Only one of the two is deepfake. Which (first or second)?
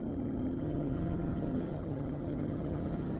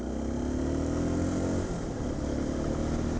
first